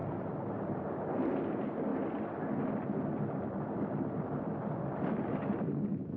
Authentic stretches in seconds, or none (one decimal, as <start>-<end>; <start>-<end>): 1.9-5.6